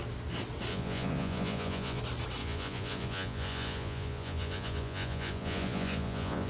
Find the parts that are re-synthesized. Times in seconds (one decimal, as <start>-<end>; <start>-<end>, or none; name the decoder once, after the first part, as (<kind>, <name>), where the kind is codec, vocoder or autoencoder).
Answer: 0.7-2.0 (vocoder, Vocos); 2.4-6.5